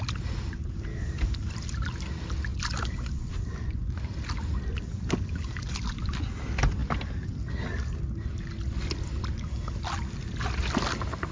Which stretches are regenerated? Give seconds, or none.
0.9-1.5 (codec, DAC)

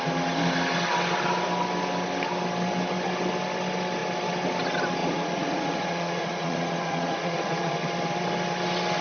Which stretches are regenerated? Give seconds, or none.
5.0-7.7 (vocoder, Vocos)

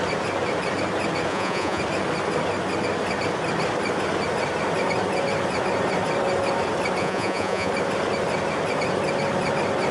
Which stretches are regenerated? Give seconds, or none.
1.3-1.8 (vocoder, Vocos); 7.0-7.7

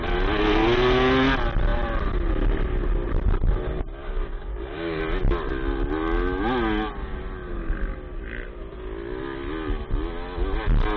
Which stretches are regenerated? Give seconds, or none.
4.0-5.0 (codec, DAC)

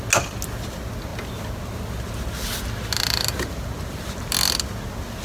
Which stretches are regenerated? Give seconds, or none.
none

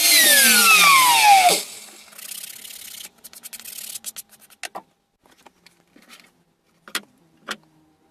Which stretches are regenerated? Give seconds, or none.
none

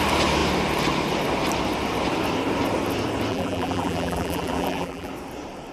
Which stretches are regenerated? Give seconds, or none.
3.3-5.1 (vocoder, BigVGAN v2)

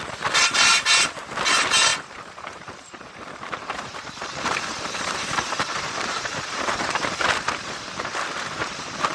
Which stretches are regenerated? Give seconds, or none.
0.0-9.1 (vocoder, BigVGAN v2)